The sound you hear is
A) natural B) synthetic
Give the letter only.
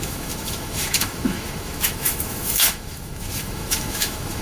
B